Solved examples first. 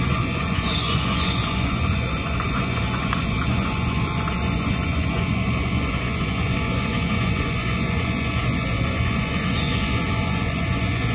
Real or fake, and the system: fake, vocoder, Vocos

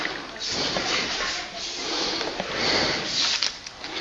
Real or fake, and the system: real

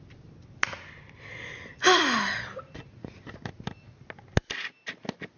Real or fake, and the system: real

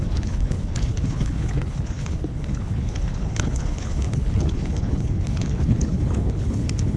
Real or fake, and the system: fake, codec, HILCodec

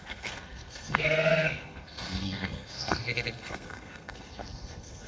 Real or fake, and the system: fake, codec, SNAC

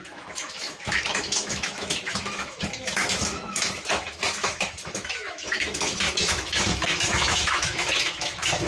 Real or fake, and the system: fake, autoencoder, DAC-VAE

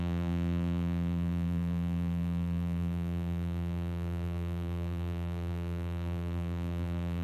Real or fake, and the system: fake, vocoder, BigVGAN v2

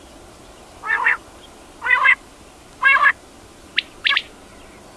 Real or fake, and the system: real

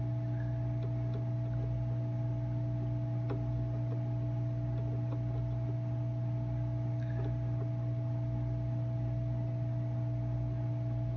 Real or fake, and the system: real